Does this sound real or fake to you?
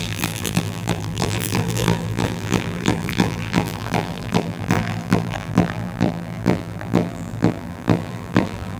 fake